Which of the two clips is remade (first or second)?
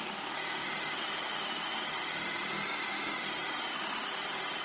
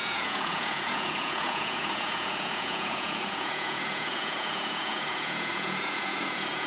second